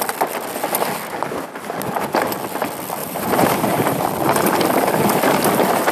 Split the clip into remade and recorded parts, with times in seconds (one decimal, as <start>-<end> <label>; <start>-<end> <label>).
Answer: 0.0-3.0 recorded; 3.0-3.9 remade; 3.9-5.9 recorded